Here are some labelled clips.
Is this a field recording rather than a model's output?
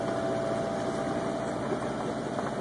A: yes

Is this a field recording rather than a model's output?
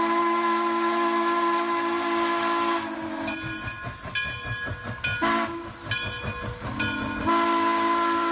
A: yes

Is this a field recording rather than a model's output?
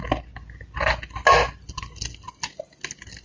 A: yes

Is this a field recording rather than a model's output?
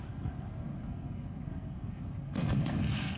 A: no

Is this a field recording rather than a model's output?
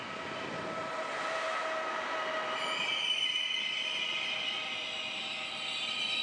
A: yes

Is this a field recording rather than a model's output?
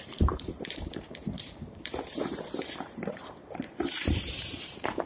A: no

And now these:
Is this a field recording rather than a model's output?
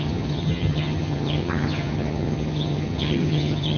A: no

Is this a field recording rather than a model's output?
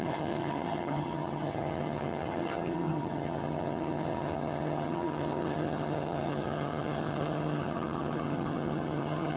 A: no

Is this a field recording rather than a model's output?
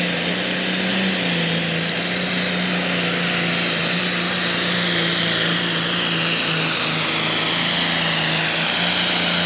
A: yes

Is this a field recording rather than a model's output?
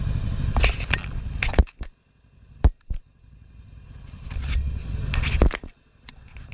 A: yes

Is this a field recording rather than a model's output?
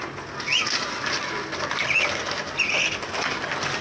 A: yes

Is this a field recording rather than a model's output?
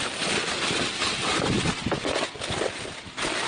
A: yes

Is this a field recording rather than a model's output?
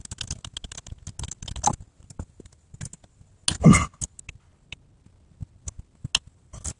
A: yes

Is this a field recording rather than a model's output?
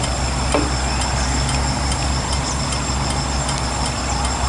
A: yes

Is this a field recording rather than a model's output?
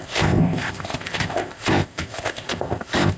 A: no